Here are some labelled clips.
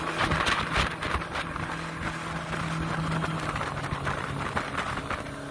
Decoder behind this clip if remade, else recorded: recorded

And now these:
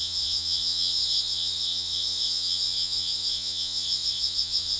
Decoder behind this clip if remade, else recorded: remade, vocoder, WaveNeXt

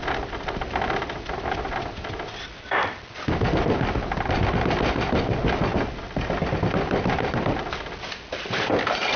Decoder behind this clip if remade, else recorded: recorded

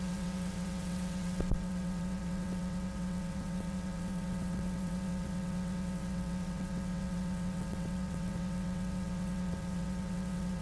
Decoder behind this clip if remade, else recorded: remade, vocoder, WaveNeXt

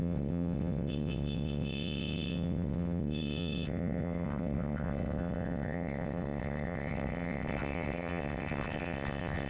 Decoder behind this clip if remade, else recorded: remade, vocoder, WaveNeXt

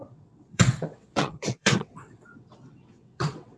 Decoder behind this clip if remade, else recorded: remade, vocoder, WaveNeXt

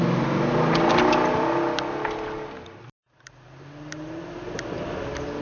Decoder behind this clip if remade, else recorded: recorded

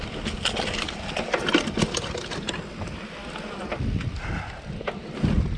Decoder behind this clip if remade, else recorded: recorded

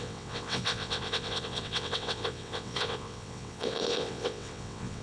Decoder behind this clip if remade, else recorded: remade, vocoder, WaveNeXt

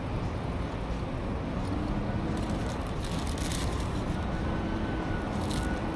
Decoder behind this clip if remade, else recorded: recorded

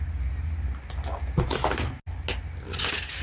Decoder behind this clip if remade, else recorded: recorded